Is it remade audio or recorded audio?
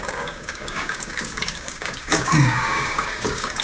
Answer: remade